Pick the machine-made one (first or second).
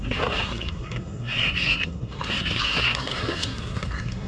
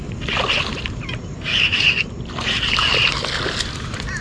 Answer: first